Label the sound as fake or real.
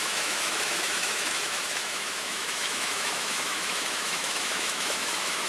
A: fake